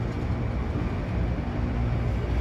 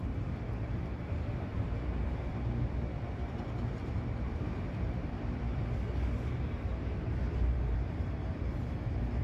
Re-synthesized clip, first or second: second